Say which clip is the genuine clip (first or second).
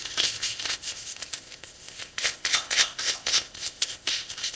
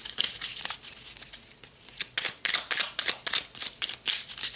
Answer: second